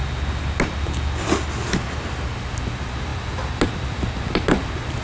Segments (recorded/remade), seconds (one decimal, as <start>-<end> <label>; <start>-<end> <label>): 0.0-5.0 recorded